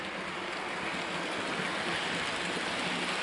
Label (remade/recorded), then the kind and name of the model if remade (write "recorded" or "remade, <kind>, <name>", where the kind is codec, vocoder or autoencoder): recorded